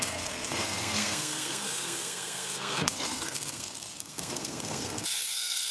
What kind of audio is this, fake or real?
fake